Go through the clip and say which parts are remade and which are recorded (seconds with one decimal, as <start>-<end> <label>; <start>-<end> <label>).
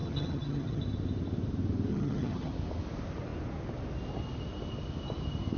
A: 0.0-0.8 remade; 0.8-1.9 recorded; 1.9-2.5 remade; 2.5-5.6 recorded